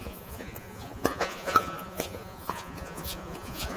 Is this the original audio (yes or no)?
no